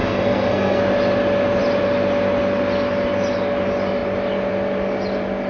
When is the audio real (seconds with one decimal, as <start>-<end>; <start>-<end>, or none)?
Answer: 0.8-5.5